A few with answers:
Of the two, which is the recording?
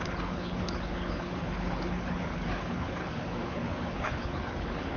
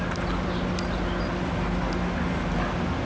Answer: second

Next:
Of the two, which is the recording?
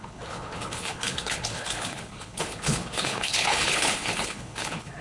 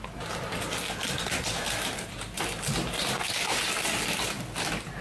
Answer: second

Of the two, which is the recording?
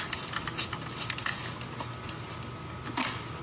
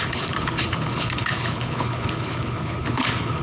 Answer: first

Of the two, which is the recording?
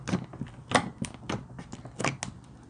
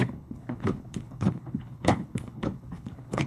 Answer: first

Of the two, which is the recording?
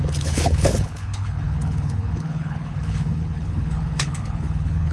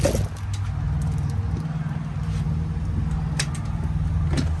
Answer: second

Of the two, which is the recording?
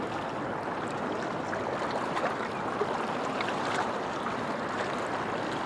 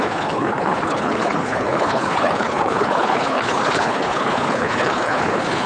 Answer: first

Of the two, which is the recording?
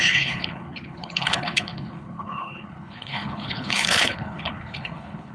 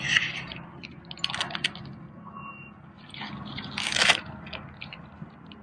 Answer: second